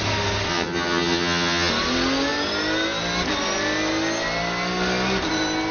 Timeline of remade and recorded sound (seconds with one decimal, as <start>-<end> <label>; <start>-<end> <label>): 0.0-0.5 recorded; 0.5-1.7 remade; 1.7-5.7 recorded